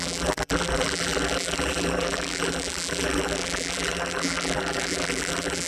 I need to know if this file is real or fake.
fake